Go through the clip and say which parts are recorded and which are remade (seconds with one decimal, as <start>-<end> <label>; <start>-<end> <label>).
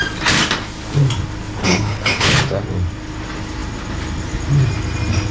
0.0-1.6 recorded; 1.6-2.4 remade; 2.4-5.3 recorded